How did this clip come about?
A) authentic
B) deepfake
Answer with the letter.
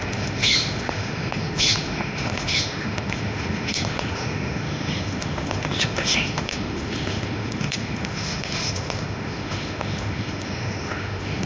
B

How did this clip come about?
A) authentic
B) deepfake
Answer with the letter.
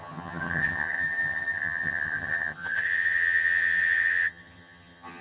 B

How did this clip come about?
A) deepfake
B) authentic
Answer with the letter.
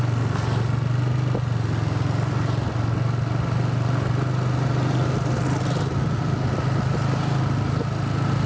B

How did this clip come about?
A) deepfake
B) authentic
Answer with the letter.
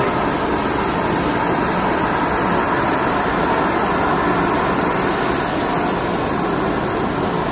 B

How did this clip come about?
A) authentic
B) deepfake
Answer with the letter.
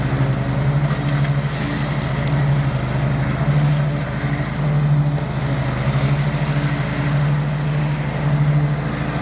A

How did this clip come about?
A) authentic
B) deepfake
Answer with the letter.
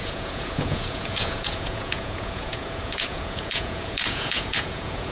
B